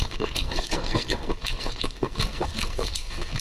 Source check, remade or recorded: remade